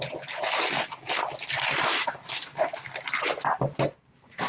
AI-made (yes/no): no